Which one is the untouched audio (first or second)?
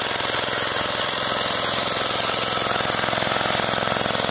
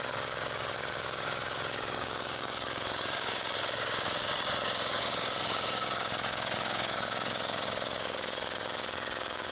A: first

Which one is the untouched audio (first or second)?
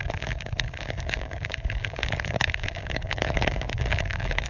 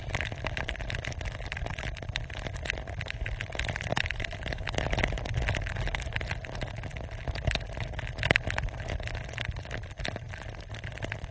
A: second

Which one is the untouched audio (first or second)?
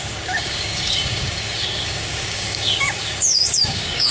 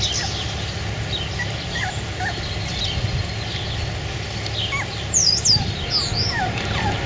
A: second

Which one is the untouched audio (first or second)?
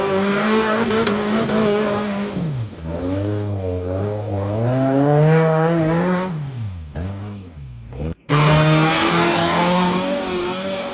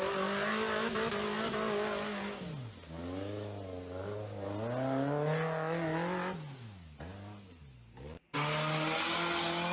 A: second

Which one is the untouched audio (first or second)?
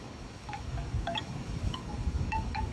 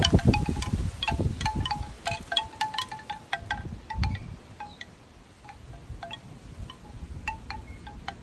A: second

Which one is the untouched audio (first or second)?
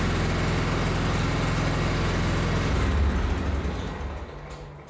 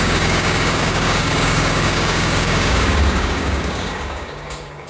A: first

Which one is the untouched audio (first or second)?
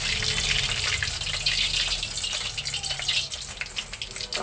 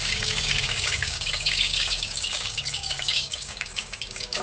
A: first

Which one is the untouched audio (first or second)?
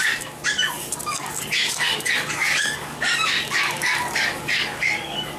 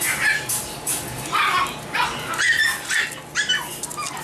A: second